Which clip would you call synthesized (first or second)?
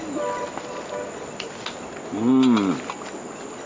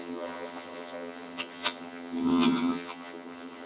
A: second